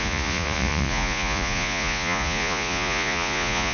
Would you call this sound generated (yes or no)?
yes